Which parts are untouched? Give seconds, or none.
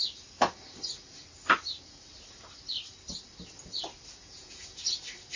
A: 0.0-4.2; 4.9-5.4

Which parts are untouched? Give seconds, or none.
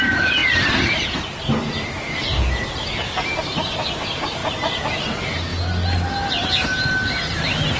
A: 0.0-7.8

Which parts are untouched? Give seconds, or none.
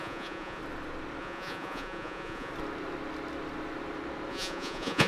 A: 0.6-1.2; 2.5-4.3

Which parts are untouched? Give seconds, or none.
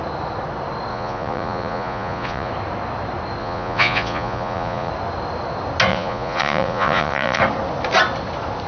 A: 0.0-0.9; 2.5-3.4; 4.9-5.9; 7.4-8.7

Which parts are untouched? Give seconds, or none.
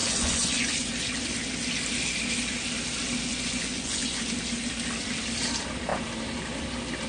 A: 0.9-3.3; 4.2-7.1